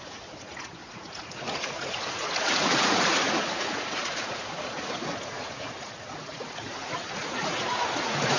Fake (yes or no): yes